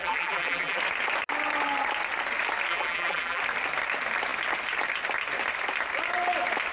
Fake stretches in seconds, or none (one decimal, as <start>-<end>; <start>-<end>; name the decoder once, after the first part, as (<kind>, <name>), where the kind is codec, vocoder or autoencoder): 0.0-0.8 (vocoder, BigVGAN v2); 2.7-3.4